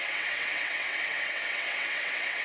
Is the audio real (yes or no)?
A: no